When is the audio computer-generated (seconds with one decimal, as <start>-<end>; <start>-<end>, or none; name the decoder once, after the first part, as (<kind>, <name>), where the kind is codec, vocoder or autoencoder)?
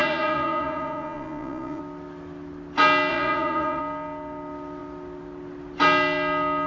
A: 0.0-1.8 (vocoder, Vocos); 3.1-3.8